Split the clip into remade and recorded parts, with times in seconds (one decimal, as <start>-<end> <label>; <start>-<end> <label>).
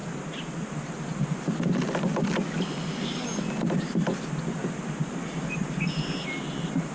0.0-4.6 recorded; 4.6-5.6 remade; 5.6-6.9 recorded